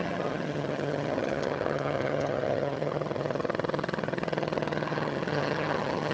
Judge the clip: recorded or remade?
remade